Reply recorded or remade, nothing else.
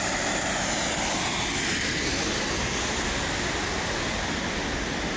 recorded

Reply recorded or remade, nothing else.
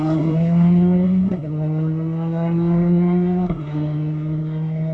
remade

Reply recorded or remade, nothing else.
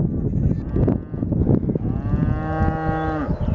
recorded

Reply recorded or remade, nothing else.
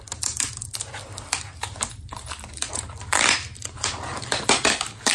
recorded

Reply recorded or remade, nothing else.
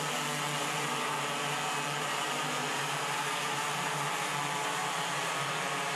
recorded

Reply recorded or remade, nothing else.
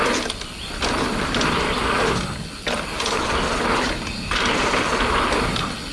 recorded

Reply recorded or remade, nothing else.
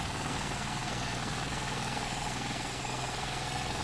remade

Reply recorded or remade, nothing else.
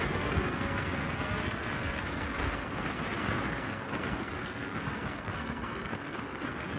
remade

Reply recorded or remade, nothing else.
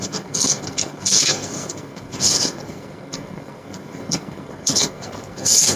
remade